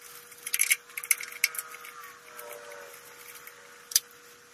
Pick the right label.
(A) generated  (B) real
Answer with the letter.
B